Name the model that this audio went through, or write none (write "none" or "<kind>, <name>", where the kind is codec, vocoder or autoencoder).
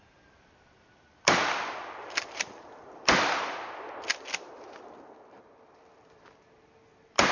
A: vocoder, BigVGAN v2